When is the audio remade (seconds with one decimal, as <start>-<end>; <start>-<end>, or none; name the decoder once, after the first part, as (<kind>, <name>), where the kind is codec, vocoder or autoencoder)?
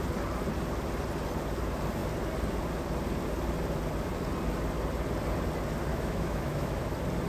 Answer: 5.9-6.8 (autoencoder, DAC-VAE)